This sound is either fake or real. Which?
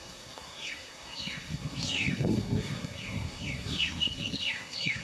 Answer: fake